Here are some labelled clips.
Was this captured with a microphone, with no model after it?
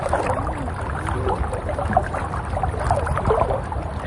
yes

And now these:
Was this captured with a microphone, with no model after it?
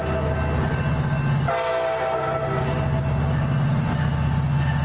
yes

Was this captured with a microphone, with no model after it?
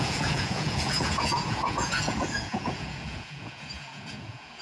no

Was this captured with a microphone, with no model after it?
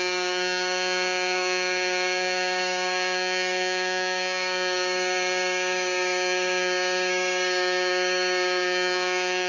no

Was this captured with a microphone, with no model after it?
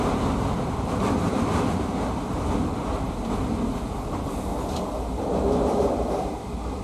no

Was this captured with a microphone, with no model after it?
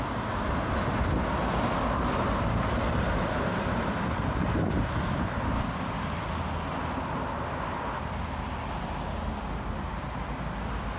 yes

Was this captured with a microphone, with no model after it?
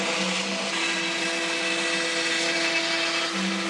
yes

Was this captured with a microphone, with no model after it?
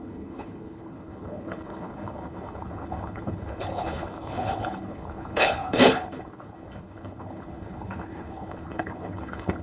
no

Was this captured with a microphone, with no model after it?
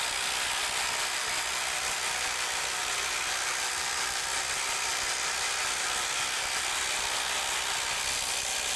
yes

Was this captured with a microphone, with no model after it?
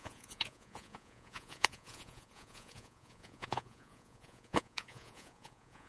no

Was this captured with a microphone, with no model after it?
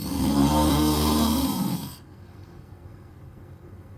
no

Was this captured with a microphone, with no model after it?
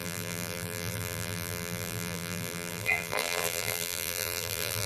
no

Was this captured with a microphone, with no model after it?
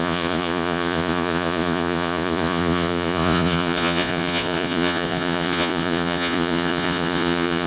no